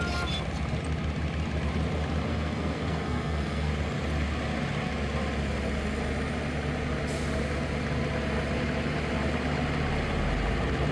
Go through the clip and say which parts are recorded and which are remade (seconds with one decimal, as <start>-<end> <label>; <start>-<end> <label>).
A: 0.0-2.3 recorded; 2.3-3.7 remade; 3.7-10.9 recorded